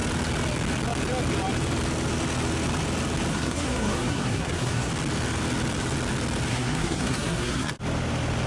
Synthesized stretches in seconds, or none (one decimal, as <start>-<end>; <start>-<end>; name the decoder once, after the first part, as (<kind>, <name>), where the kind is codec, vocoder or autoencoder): 3.3-4.9 (codec, SNAC); 6.5-7.7